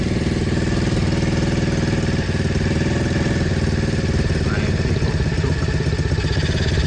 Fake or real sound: real